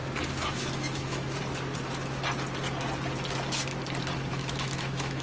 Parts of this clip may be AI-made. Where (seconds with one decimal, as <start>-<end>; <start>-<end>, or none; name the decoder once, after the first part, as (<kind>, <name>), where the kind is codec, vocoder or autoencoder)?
0.5-1.4 (autoencoder, DAC-VAE); 4.3-5.2